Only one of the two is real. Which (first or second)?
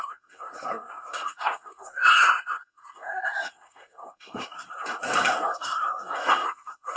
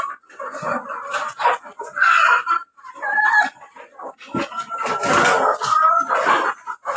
second